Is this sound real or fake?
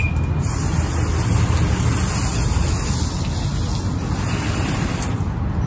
real